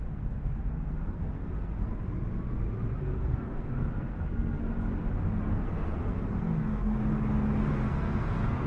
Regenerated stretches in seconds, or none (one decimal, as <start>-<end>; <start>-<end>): 0.0-1.9; 3.0-4.6; 5.4-7.0; 7.6-8.7